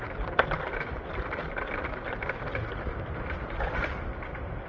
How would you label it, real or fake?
real